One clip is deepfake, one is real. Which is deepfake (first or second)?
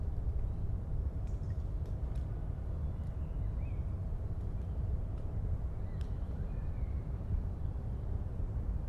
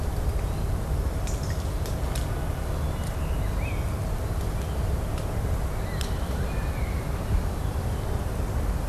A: first